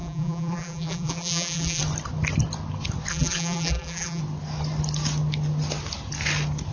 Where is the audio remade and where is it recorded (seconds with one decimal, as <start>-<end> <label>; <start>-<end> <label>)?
0.0-1.8 remade; 1.8-3.1 recorded; 3.1-4.2 remade; 4.2-6.7 recorded